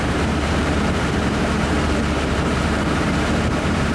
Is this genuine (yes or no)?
no